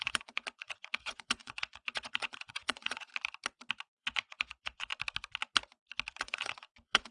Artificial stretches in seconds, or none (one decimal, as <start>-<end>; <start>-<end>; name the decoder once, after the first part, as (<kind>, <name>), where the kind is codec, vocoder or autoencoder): 0.0-3.1 (vocoder, Vocos); 3.9-4.9; 6.2-7.1